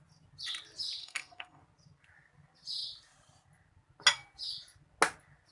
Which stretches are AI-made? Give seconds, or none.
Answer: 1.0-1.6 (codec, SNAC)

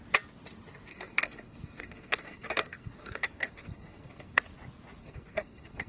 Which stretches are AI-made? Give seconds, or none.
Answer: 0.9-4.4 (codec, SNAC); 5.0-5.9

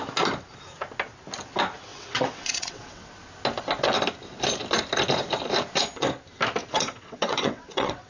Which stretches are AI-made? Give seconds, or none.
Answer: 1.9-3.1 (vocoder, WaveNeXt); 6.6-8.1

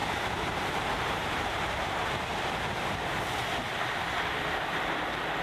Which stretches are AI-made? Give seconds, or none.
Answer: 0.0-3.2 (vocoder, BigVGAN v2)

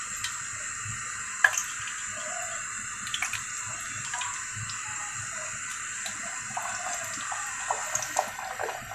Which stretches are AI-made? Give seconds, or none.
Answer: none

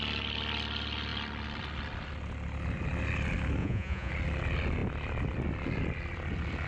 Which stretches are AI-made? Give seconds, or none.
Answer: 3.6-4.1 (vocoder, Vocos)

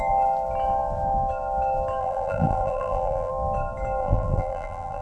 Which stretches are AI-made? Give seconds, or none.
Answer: 2.0-3.3 (vocoder, BigVGAN v2); 4.0-5.0

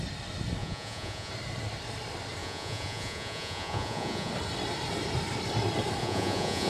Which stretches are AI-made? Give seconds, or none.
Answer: 0.6-1.3 (vocoder, Vocos); 2.4-4.3; 6.0-6.7